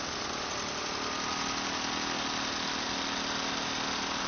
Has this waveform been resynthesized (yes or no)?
no